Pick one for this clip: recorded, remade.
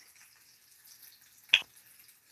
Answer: recorded